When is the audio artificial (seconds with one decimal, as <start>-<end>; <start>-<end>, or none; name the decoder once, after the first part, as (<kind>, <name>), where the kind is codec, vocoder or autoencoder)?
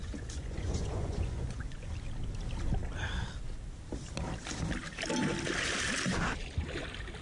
0.0-1.9 (vocoder, Vocos)